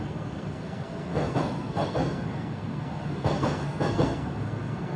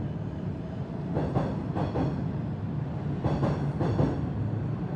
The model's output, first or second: first